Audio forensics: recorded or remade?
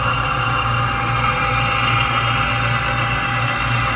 recorded